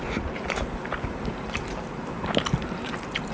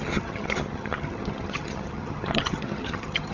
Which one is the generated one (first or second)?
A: second